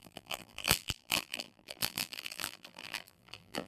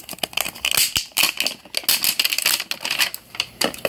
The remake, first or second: first